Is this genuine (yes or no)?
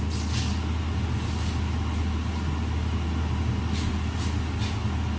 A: yes